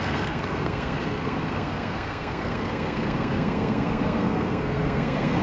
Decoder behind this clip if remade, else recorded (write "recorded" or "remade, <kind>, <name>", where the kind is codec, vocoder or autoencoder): remade, codec, SNAC